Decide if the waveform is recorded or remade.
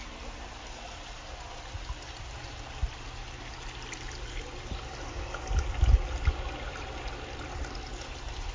recorded